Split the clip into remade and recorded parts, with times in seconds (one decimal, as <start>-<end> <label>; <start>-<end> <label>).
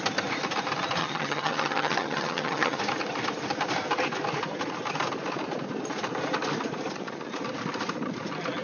0.0-1.0 recorded; 1.0-2.8 remade; 2.8-8.6 recorded